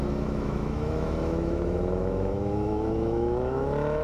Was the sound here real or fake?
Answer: fake